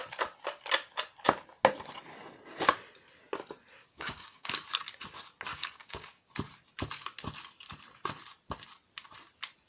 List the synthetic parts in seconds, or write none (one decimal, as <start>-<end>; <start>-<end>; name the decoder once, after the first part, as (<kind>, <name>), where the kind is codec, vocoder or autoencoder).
3.8-4.5 (codec, DAC); 5.5-6.3